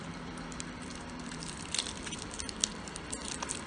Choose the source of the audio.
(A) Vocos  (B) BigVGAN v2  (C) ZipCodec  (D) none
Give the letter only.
B